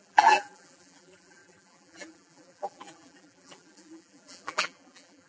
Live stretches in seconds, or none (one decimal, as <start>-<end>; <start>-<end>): none